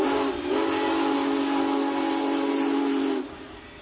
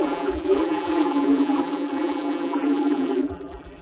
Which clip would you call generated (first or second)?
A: second